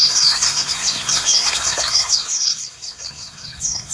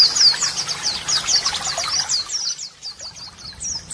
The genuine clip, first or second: second